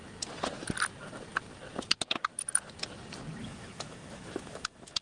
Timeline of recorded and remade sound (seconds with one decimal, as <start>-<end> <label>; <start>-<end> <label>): 0.0-3.4 recorded; 3.4-5.0 remade